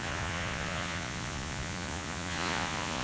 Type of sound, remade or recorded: remade